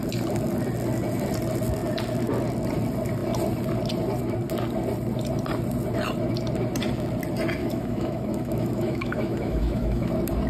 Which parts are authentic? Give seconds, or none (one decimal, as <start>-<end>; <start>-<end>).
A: 0.0-7.6; 10.1-10.5